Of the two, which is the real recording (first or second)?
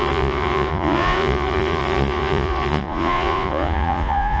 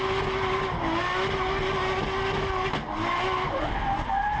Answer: second